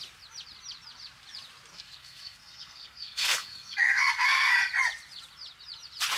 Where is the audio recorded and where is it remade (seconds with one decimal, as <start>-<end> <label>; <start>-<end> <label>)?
0.0-1.7 recorded; 1.7-4.5 remade; 4.5-6.2 recorded